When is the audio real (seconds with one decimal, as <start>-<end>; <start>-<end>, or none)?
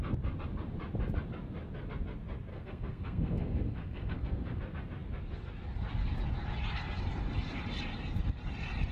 0.0-2.5; 4.6-8.9